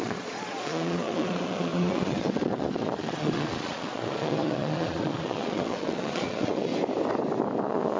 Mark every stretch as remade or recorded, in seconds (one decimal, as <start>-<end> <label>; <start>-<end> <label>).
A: 0.0-6.7 remade; 6.7-7.6 recorded; 7.6-8.0 remade